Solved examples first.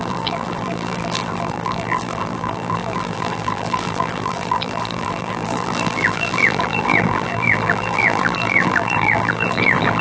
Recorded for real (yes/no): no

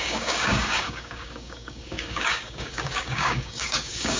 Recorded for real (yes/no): no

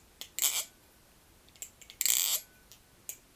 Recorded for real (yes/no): yes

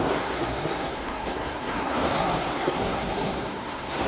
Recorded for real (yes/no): no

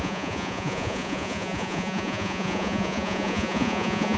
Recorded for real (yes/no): no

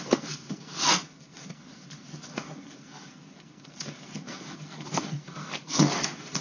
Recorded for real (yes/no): no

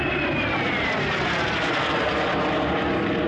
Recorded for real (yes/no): yes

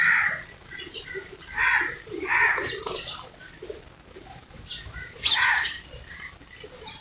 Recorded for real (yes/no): no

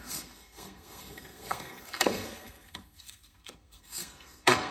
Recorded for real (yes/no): no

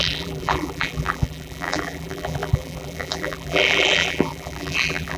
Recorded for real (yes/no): no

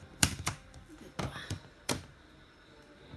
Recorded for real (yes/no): no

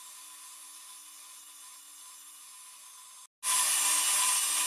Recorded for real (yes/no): yes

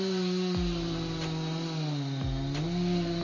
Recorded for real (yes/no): yes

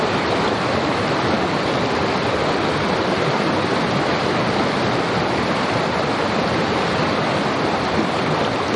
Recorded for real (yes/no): yes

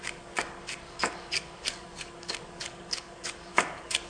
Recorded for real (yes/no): no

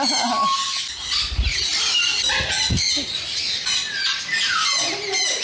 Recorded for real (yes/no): yes